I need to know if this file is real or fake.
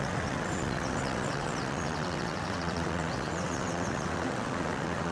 fake